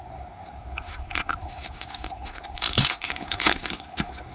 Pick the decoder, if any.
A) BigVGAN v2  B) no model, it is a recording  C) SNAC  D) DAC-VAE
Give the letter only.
C